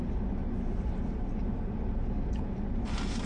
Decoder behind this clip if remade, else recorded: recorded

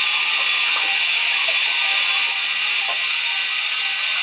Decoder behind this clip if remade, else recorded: recorded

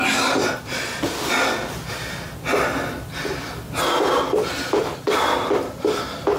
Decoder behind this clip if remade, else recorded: recorded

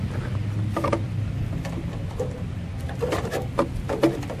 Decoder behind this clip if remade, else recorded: recorded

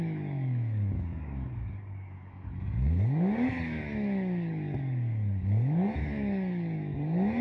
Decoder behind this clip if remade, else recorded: remade, codec, DAC